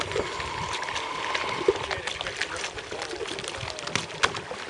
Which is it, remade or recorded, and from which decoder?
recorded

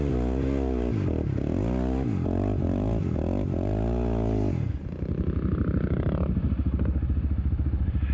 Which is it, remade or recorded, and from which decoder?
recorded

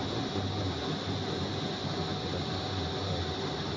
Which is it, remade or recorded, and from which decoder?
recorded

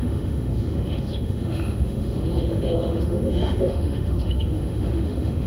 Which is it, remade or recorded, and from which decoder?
remade, autoencoder, DAC-VAE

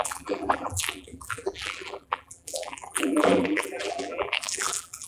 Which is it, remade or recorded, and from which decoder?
remade, vocoder, BigVGAN v2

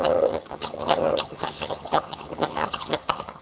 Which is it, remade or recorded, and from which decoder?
remade, vocoder, HiFi-GAN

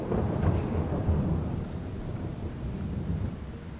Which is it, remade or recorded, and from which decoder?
recorded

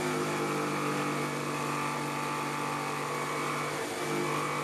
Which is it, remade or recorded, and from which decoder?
recorded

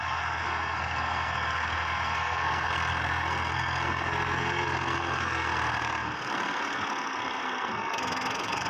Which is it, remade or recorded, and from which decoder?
remade, codec, SNAC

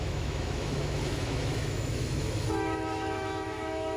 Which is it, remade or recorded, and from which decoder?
remade, autoencoder, DAC-VAE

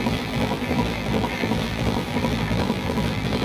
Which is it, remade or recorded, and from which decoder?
remade, vocoder, BigVGAN v2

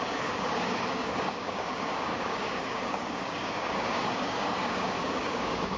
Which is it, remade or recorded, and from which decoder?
remade, codec, DAC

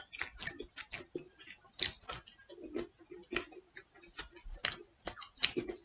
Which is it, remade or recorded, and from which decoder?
recorded